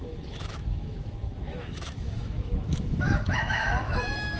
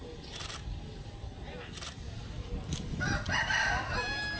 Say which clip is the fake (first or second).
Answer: first